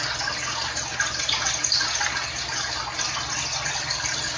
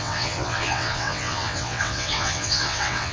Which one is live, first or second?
first